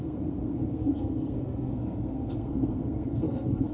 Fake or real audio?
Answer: fake